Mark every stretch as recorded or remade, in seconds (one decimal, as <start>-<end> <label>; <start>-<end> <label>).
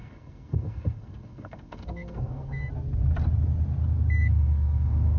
0.0-2.7 remade; 2.7-4.2 recorded; 4.2-5.2 remade